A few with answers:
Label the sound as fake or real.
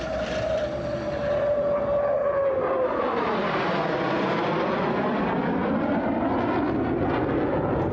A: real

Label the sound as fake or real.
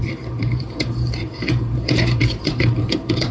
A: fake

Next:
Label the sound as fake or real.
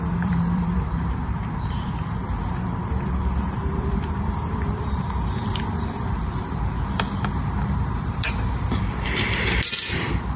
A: fake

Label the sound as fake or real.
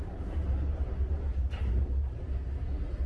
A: fake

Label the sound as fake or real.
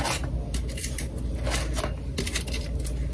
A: real